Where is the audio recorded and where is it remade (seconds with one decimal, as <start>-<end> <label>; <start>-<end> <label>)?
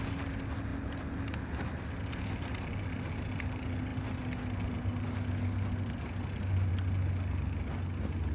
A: 0.0-8.3 recorded